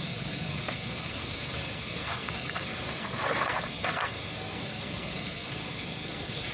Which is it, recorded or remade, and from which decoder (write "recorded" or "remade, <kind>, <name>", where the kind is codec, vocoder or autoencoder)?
remade, codec, SNAC